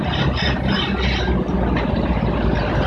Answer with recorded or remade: recorded